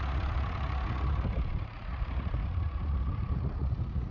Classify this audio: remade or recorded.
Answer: remade